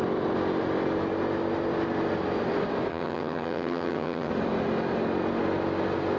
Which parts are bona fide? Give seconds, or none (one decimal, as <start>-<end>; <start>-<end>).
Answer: 0.0-2.9; 4.3-6.2